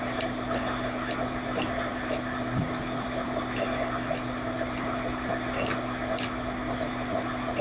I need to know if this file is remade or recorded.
recorded